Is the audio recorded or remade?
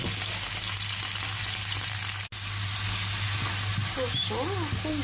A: recorded